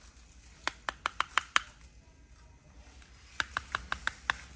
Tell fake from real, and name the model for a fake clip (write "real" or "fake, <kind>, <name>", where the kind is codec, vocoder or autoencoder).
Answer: real